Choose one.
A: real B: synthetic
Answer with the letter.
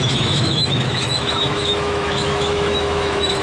B